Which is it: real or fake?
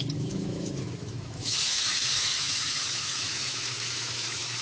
fake